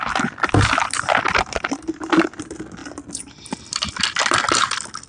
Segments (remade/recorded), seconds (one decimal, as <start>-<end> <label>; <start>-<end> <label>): 0.0-5.1 recorded